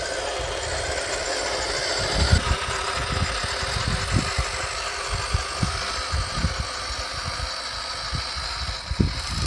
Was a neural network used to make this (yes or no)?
no